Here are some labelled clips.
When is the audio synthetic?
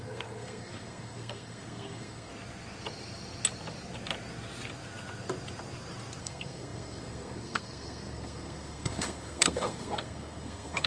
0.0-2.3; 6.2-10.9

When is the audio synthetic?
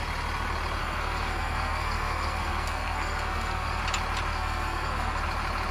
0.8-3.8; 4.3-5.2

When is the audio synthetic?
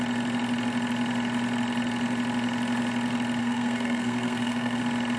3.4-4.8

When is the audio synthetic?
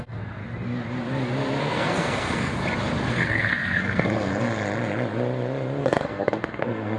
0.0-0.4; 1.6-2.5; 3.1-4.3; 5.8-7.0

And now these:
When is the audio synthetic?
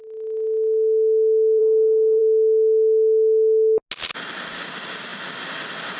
1.6-2.2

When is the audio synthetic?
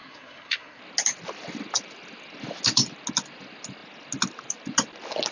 0.0-0.8